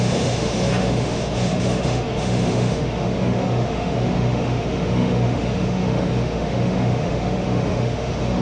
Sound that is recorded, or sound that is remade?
remade